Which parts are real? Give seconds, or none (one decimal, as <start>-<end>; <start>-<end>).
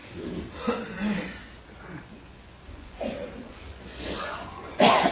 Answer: 0.0-0.6; 1.4-2.0